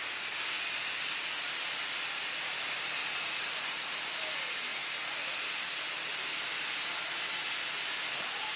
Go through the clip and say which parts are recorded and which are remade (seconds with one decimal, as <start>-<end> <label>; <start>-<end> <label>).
0.0-3.0 recorded; 3.0-4.0 remade; 4.0-8.6 recorded